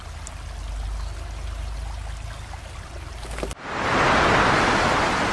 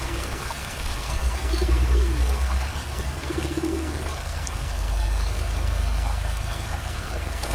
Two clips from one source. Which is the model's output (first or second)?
second